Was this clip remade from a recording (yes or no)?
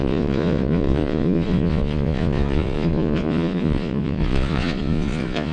yes